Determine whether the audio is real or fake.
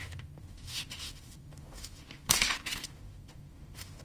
fake